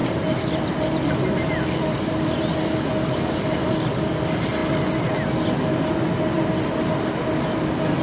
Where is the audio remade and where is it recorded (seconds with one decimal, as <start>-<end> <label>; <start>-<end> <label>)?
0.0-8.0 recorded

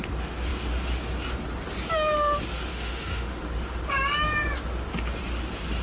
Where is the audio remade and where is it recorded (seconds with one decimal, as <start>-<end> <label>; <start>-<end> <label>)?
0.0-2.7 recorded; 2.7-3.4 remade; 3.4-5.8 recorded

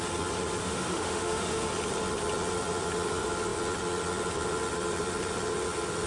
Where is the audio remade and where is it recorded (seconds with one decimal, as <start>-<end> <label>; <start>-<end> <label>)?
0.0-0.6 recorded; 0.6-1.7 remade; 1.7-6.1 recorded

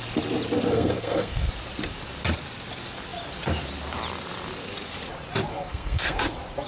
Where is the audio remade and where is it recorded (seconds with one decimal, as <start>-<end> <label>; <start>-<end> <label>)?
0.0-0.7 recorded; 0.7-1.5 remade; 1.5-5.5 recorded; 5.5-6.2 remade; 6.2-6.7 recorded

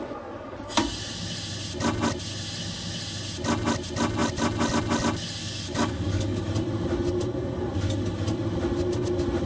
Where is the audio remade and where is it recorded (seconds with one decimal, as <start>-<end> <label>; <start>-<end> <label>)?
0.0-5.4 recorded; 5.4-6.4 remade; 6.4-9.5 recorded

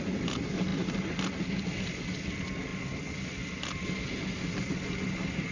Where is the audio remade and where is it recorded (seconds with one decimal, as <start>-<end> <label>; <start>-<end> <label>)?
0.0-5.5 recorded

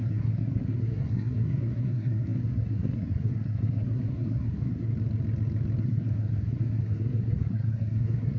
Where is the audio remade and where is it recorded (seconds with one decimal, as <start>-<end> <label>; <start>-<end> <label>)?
0.0-4.9 remade; 4.9-5.8 recorded; 5.8-8.4 remade

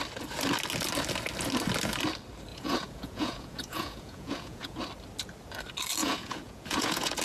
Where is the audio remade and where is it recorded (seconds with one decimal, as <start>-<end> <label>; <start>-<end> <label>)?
0.0-2.5 recorded; 2.5-4.8 remade; 4.8-6.0 recorded; 6.0-7.2 remade